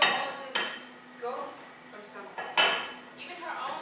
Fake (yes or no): no